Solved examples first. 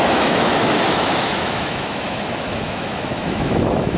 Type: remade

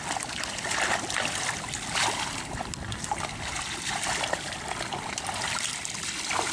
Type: recorded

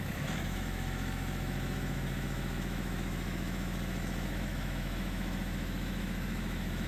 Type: remade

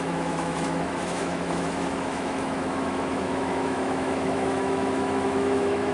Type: remade